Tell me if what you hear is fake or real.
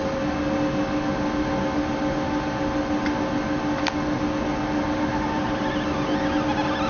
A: real